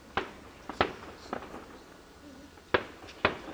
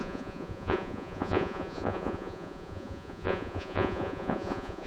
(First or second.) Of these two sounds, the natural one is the first